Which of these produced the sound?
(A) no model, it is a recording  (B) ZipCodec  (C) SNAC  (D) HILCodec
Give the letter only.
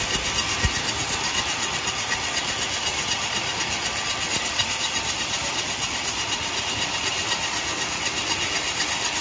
A